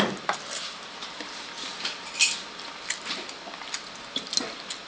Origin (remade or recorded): recorded